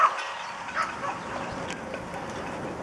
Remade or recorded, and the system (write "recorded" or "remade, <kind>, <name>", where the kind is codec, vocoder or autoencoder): recorded